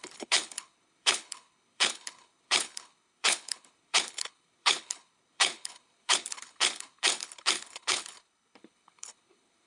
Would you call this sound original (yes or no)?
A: no